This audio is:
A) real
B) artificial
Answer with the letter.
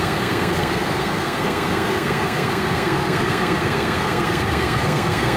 B